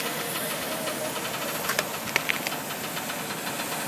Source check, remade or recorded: recorded